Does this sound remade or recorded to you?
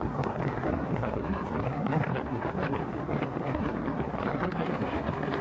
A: remade